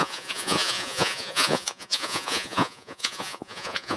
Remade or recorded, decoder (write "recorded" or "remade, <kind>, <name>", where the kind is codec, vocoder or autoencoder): remade, vocoder, Vocos